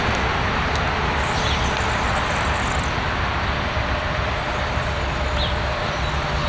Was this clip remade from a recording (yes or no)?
no